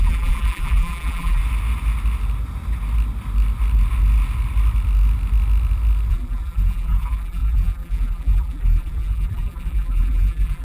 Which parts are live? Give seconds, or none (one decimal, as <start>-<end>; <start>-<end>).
1.4-6.1